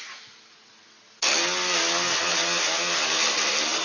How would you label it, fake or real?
real